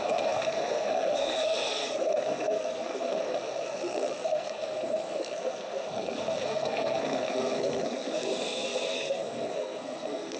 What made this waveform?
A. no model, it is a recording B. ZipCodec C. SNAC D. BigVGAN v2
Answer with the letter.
C